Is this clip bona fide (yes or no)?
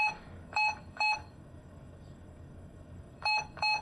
no